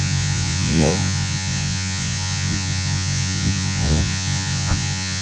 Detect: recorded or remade remade